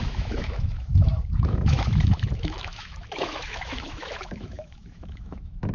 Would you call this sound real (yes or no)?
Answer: no